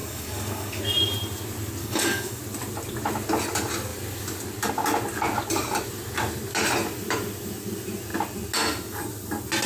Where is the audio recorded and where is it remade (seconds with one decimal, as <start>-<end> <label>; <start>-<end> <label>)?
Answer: 0.0-0.8 remade; 0.8-1.8 recorded; 1.8-2.4 remade; 2.4-9.7 recorded